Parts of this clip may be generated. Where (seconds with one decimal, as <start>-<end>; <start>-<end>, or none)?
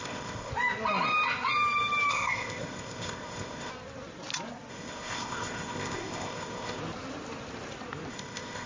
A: 0.0-0.5; 2.1-3.7; 4.7-6.8; 8.1-8.7